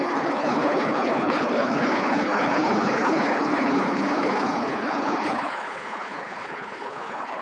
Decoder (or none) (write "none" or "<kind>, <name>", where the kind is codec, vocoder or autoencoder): codec, HILCodec